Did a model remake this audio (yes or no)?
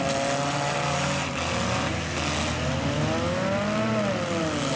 no